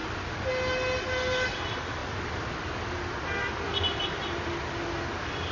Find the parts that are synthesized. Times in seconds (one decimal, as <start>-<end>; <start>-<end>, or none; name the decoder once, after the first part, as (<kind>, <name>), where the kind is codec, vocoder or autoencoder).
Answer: none